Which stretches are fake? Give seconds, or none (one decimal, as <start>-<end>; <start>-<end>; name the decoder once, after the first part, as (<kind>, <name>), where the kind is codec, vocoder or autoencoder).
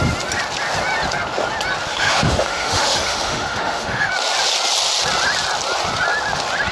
1.9-4.1 (autoencoder, DAC-VAE)